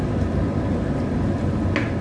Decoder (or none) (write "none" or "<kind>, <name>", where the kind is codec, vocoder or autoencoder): none